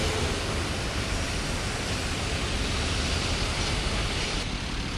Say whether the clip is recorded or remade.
recorded